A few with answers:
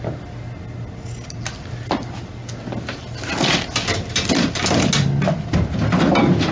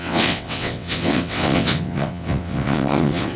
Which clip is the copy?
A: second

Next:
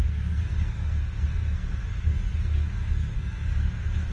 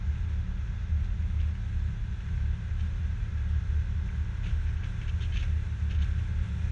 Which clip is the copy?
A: first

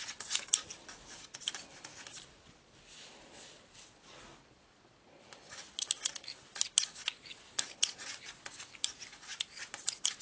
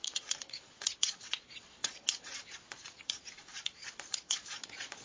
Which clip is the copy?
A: second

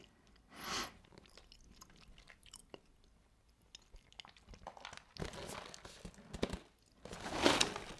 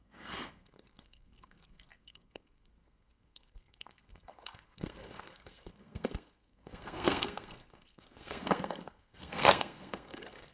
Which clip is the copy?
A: second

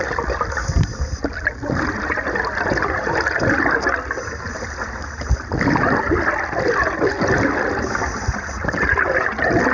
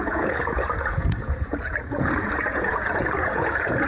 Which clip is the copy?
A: second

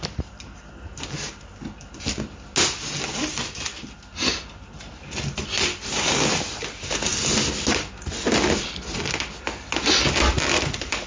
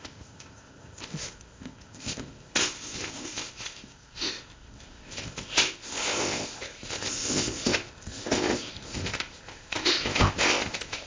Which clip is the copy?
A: second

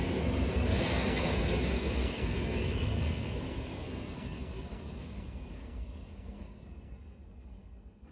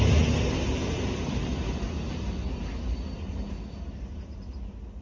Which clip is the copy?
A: first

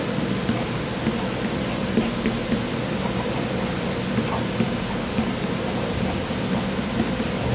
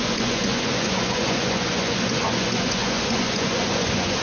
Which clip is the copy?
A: second